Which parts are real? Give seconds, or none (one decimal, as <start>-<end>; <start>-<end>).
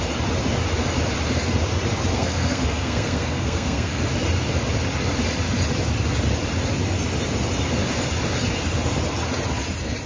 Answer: 0.0-2.1; 4.0-10.1